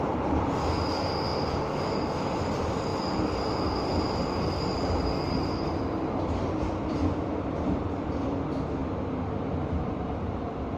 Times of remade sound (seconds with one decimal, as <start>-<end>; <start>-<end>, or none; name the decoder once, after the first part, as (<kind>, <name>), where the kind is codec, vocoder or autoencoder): 0.0-1.3 (vocoder, BigVGAN v2); 1.8-2.9; 6.2-8.8; 9.5-10.8